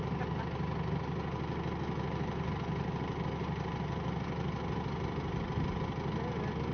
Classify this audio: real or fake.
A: real